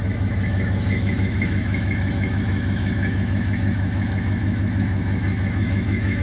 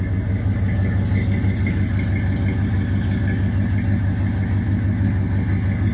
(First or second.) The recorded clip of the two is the second